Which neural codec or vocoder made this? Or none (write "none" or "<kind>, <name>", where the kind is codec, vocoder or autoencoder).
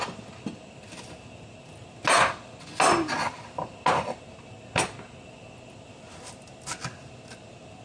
none